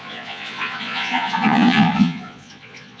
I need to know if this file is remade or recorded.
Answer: remade